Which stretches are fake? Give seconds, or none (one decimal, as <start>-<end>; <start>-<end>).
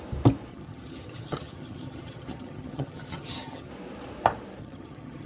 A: 0.5-3.7; 4.6-5.3